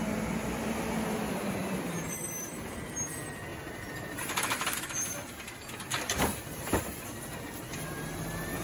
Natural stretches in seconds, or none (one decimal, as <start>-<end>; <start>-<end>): 0.0-1.6; 2.8-3.5; 6.8-8.6